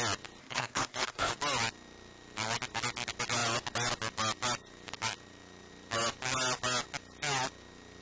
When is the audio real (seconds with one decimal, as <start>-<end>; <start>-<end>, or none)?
0.0-0.4; 1.3-8.0

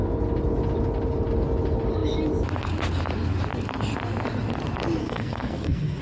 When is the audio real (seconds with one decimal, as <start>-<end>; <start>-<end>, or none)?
0.0-5.0

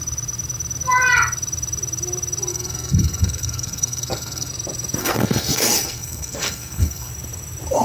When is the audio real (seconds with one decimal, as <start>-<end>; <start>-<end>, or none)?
0.0-2.5; 4.5-5.0; 7.1-7.8

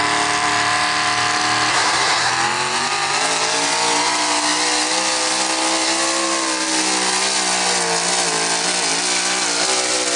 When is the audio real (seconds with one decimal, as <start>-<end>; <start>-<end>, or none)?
0.0-1.7; 2.3-10.2

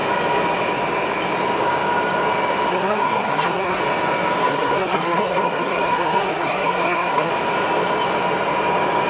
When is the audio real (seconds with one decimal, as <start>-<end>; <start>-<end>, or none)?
0.0-2.7; 3.8-4.4; 7.3-9.1

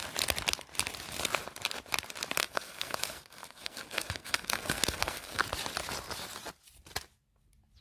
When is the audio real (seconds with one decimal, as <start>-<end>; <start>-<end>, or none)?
0.0-2.4; 5.4-7.8